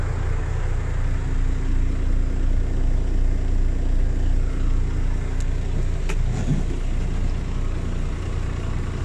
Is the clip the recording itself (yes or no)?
yes